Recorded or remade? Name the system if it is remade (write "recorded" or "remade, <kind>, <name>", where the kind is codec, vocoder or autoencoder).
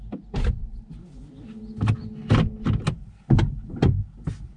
recorded